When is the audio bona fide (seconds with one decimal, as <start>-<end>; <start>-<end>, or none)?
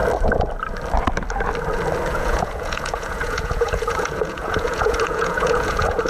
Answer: 0.0-2.1